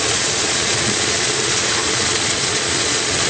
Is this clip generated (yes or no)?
yes